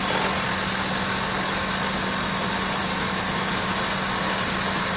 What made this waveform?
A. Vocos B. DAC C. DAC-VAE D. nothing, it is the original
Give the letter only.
D